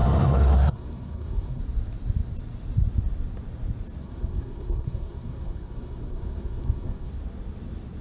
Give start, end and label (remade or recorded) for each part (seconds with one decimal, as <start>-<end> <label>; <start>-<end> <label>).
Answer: 0.0-1.6 remade; 1.6-4.0 recorded; 4.0-7.1 remade; 7.1-8.0 recorded